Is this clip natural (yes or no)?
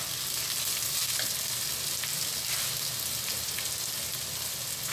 yes